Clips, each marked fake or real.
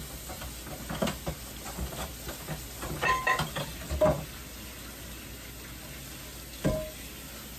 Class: real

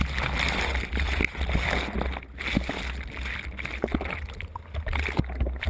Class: real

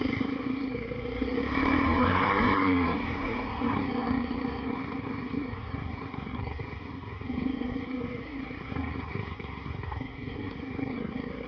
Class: fake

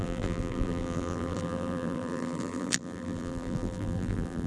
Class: fake